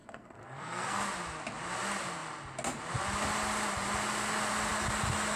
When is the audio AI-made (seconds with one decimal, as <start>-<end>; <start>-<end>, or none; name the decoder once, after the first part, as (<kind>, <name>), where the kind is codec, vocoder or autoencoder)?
0.0-1.0 (codec, SNAC)